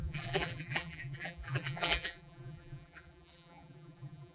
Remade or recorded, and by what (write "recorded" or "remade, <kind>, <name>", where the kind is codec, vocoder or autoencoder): remade, vocoder, BigVGAN v2